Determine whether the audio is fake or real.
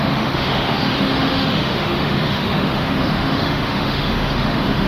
fake